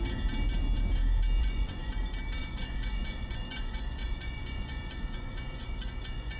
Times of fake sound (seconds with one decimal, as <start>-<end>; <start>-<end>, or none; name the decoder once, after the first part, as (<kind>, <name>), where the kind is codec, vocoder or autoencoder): 1.4-1.9 (vocoder, Vocos); 2.4-6.4